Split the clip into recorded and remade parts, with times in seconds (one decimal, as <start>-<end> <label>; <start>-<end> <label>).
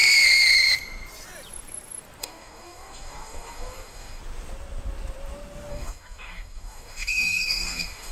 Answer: 0.0-2.2 recorded; 2.2-4.2 remade; 4.2-5.7 recorded; 5.7-8.1 remade